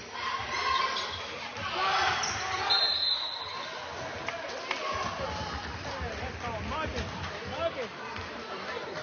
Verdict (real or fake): real